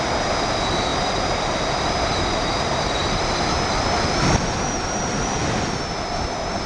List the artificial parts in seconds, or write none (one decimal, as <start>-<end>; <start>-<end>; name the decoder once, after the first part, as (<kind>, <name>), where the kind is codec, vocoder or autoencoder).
0.0-0.9 (vocoder, BigVGAN v2); 2.6-3.0; 3.7-6.7